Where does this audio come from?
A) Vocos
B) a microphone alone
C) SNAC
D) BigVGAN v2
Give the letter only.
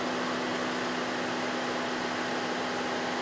B